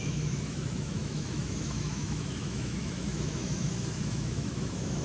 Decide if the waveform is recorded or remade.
remade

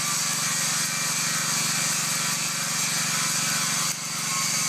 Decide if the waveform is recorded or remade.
recorded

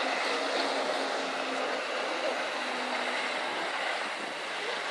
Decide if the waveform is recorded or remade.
recorded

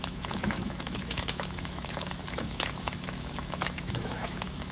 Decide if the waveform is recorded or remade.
remade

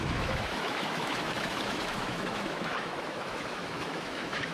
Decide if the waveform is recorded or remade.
remade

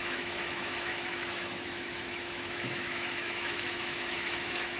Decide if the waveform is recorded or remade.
remade